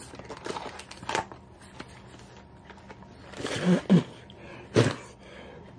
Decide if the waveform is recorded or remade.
recorded